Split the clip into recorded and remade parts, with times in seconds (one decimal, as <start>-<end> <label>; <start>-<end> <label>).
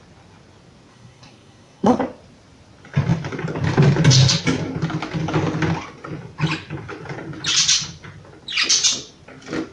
0.0-0.9 recorded; 0.9-2.0 remade; 2.0-9.7 recorded